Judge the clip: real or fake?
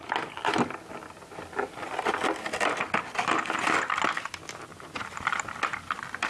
real